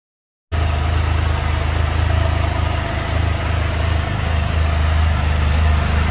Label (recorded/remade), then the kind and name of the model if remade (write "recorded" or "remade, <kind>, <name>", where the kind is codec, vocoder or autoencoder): recorded